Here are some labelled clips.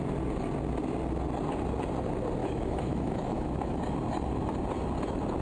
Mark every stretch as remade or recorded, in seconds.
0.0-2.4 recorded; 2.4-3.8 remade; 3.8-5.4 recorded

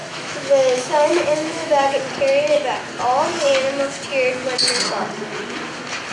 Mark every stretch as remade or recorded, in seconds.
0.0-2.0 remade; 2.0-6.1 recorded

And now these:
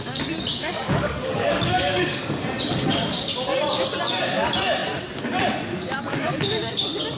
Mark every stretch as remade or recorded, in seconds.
0.0-0.5 recorded; 0.5-2.4 remade; 2.4-7.2 recorded

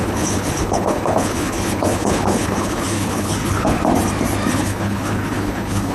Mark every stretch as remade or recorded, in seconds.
0.0-3.8 remade; 3.8-4.5 recorded; 4.5-5.9 remade